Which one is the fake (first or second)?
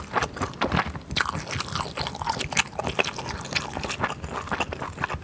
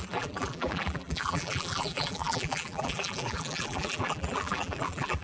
second